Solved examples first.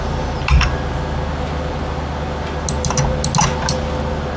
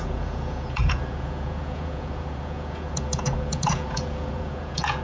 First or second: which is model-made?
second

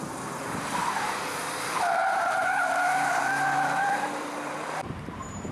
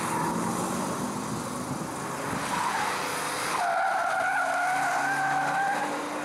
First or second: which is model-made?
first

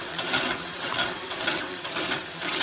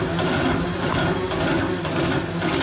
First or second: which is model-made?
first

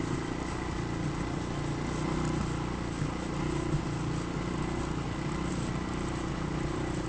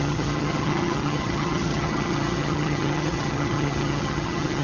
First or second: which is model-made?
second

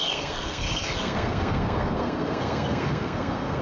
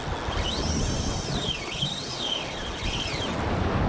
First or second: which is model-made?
first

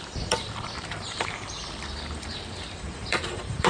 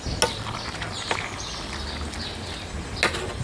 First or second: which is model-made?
first